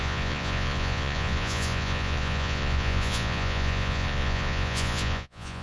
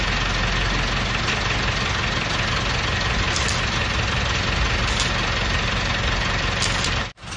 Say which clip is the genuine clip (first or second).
second